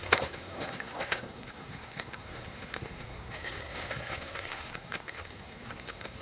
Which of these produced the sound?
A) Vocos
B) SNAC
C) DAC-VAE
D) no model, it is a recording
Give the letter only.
B